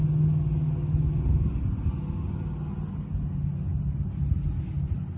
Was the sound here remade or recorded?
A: recorded